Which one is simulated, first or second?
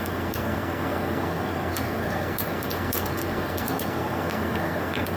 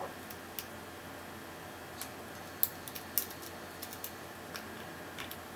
first